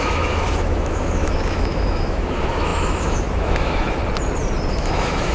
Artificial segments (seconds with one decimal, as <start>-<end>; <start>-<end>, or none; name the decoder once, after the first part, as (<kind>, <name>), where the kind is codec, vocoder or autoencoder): 0.0-4.0 (autoencoder, DAC-VAE); 4.7-5.3